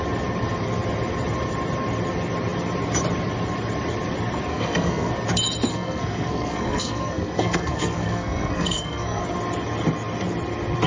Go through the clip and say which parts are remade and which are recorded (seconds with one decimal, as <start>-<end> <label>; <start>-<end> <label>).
0.0-4.5 recorded; 4.5-5.1 remade; 5.1-5.7 recorded; 5.7-9.2 remade; 9.2-10.9 recorded